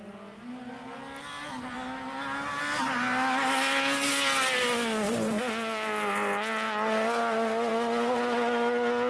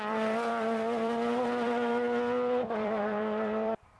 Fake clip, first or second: second